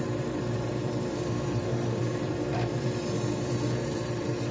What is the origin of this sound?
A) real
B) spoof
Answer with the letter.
B